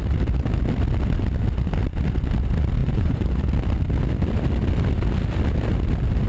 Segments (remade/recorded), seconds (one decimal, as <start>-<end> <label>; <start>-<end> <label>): 0.0-2.8 recorded; 2.8-3.4 remade; 3.4-6.3 recorded